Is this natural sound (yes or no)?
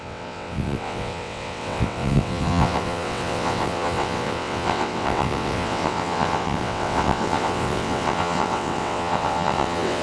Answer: no